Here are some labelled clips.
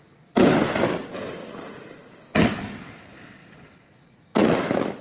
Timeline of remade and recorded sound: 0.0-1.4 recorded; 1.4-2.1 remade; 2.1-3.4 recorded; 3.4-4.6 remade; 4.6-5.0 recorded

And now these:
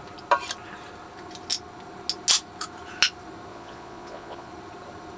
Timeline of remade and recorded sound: 0.0-3.5 recorded; 3.5-4.5 remade; 4.5-5.2 recorded

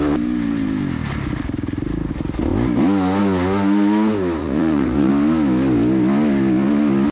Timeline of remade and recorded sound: 0.0-4.4 recorded; 4.4-5.1 remade; 5.1-7.1 recorded

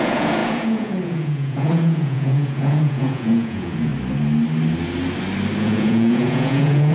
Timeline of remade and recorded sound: 0.0-3.9 remade; 3.9-5.6 recorded; 5.6-6.9 remade

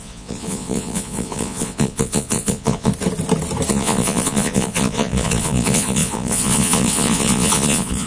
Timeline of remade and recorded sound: 0.0-2.9 remade; 2.9-3.7 recorded; 3.7-8.1 remade

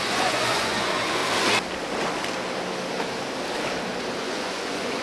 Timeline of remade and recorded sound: 0.0-1.2 remade; 1.2-4.2 recorded; 4.2-5.0 remade

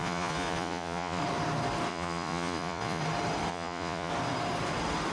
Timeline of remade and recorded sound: 0.0-1.2 remade; 1.2-1.9 recorded; 1.9-3.0 remade; 3.0-3.5 recorded; 3.5-4.1 remade; 4.1-5.1 recorded